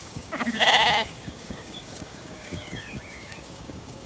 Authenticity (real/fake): fake